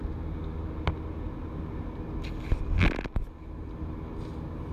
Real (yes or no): yes